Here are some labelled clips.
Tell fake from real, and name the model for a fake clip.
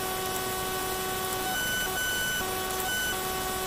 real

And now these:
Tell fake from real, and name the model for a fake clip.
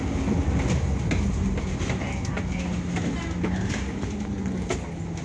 real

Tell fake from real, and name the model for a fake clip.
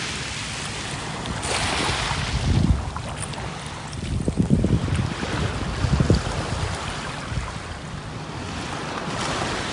real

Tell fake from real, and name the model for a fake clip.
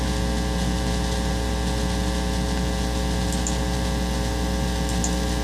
real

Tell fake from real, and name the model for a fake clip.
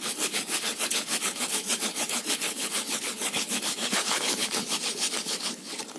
fake, codec, HILCodec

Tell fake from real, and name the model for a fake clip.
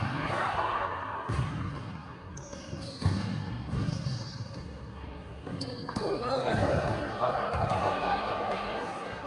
fake, codec, SNAC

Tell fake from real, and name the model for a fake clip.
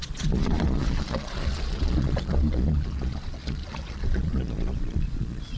fake, vocoder, Vocos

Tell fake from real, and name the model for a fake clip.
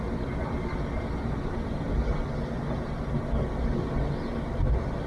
real